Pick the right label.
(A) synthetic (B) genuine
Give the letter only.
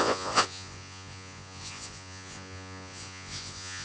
A